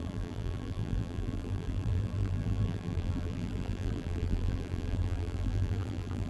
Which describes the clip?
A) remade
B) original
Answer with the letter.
A